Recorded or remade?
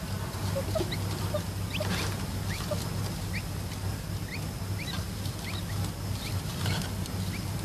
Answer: recorded